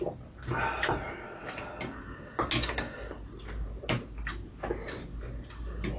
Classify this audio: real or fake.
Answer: real